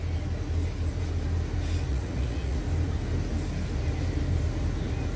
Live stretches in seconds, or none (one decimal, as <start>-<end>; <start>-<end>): 0.0-1.9; 2.6-5.2